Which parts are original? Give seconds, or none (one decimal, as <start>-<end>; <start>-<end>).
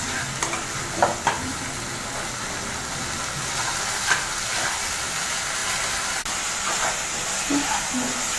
0.0-8.4